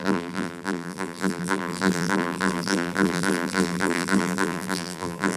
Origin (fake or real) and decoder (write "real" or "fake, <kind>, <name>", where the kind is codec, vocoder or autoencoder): fake, vocoder, BigVGAN v2